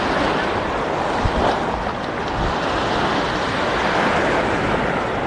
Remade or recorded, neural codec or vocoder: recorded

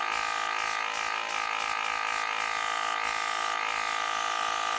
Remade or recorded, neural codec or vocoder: recorded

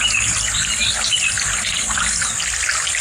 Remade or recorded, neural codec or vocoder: recorded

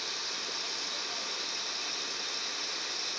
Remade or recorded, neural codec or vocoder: recorded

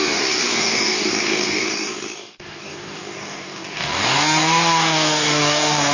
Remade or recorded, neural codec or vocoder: remade, codec, DAC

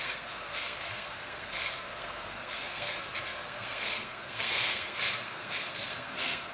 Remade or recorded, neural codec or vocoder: remade, codec, SNAC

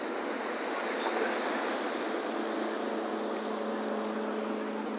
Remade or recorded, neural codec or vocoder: recorded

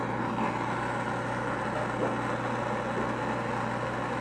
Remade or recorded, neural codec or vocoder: recorded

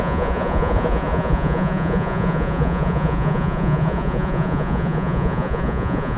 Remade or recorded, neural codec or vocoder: remade, vocoder, Vocos